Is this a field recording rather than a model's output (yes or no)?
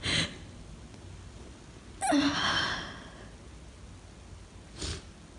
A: yes